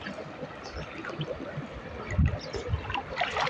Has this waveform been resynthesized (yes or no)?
no